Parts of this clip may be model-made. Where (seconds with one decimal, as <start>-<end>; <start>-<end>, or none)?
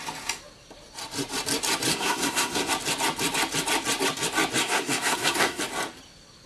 1.9-2.7; 4.6-5.6